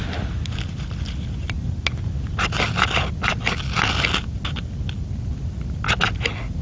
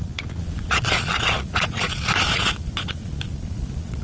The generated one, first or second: second